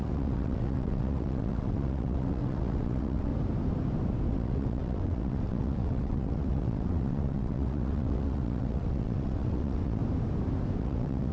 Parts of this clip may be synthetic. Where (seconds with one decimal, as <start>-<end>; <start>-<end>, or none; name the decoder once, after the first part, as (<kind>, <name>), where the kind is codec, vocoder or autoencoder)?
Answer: 0.0-3.3 (vocoder, WaveNeXt); 4.3-10.0; 10.8-11.3